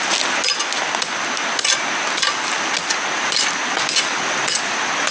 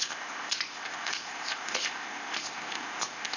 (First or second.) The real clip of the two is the first